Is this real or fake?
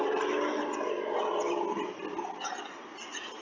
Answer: real